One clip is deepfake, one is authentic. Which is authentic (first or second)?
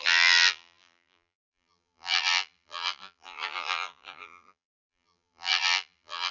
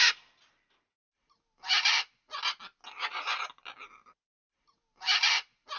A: second